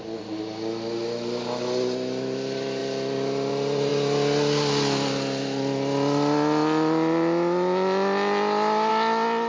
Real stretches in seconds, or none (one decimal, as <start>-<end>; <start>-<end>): 0.0-9.5